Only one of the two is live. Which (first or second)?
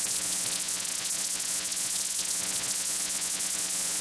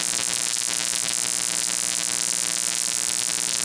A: second